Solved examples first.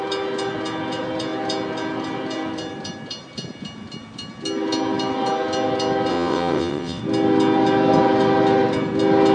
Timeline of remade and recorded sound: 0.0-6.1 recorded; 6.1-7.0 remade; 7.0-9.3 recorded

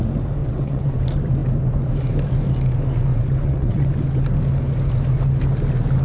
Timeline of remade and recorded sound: 0.0-0.4 recorded; 0.4-1.0 remade; 1.0-3.1 recorded; 3.1-3.9 remade; 3.9-6.0 recorded